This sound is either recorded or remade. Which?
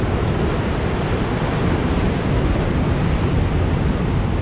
recorded